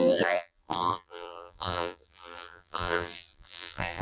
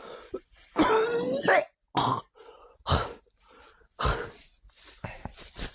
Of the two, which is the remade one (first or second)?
first